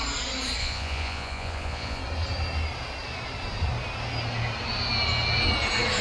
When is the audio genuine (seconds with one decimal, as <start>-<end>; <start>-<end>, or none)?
0.0-0.6; 2.0-6.0